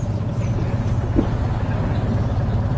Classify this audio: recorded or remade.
recorded